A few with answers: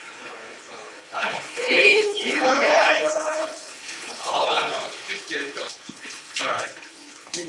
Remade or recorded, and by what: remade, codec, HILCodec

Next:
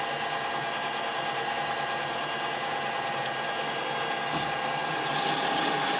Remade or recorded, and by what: recorded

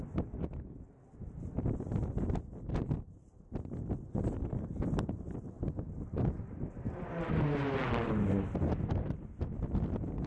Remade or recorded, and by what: recorded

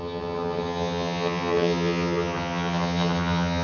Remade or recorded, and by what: remade, vocoder, HiFi-GAN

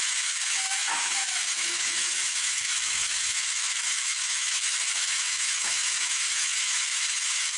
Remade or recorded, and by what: remade, autoencoder, DAC-VAE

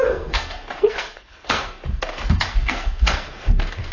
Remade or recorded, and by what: remade, codec, SNAC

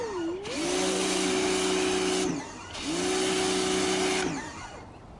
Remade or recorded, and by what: recorded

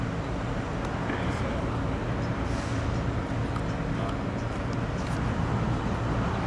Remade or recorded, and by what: recorded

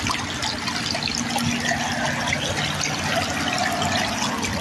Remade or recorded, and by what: recorded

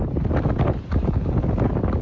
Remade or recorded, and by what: recorded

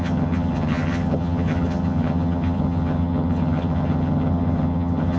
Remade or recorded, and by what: remade, vocoder, HiFi-GAN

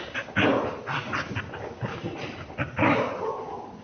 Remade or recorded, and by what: recorded